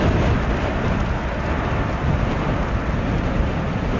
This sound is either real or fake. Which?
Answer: real